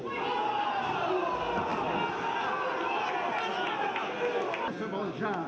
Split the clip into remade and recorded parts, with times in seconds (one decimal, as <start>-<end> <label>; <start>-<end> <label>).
0.0-5.5 recorded